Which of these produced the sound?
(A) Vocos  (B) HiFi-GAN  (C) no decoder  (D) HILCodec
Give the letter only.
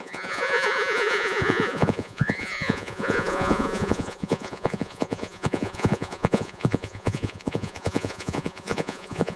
A